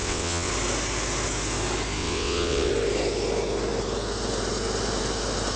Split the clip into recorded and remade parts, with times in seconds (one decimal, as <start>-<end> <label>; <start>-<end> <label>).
0.0-0.5 remade; 0.5-2.0 recorded; 2.0-2.7 remade; 2.7-5.6 recorded